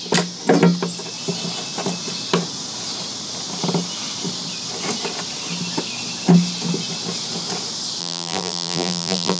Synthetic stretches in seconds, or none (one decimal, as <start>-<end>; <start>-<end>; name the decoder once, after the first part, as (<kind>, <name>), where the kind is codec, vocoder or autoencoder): 8.0-9.4 (vocoder, BigVGAN v2)